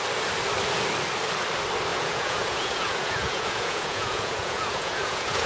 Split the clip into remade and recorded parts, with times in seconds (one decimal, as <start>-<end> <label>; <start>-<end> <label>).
0.0-1.9 recorded; 1.9-5.5 remade